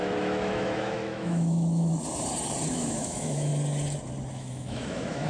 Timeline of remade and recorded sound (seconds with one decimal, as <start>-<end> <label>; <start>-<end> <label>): 0.0-1.9 remade; 1.9-2.7 recorded; 2.7-3.5 remade; 3.5-4.3 recorded; 4.3-5.3 remade